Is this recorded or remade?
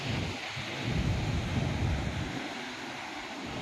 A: recorded